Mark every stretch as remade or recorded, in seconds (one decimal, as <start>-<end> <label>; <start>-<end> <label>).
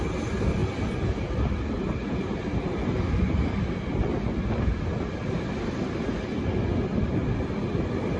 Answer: 0.0-8.2 recorded